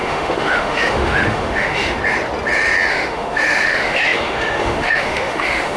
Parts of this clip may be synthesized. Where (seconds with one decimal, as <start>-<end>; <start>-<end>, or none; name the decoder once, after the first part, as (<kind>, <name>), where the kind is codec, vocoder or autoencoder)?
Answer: 0.0-2.0 (autoencoder, DAC-VAE); 2.9-5.8